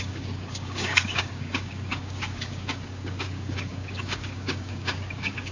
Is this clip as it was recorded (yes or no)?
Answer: no